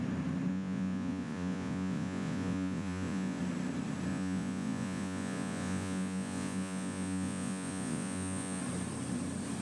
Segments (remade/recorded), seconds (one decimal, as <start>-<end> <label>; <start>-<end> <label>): 0.0-0.5 recorded; 0.5-3.4 remade; 3.4-4.1 recorded; 4.1-8.6 remade; 8.6-9.6 recorded